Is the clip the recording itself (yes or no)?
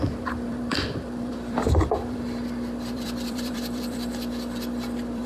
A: no